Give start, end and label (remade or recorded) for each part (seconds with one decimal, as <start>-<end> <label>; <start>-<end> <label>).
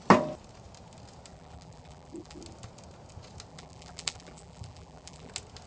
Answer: 0.0-1.3 recorded; 1.3-2.4 remade; 2.4-3.5 recorded; 3.5-5.3 remade; 5.3-5.7 recorded